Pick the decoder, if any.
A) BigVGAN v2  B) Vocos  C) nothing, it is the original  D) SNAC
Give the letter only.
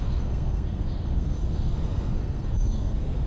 D